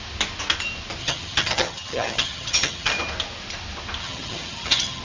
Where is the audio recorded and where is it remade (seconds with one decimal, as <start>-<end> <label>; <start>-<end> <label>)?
0.0-1.0 recorded; 1.0-2.9 remade; 2.9-4.0 recorded; 4.0-5.0 remade